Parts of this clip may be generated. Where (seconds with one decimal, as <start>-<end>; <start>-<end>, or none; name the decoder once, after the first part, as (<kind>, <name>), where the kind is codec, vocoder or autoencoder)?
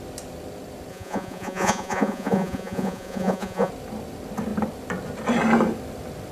0.9-3.7 (vocoder, Vocos)